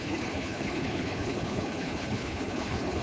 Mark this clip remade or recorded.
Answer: remade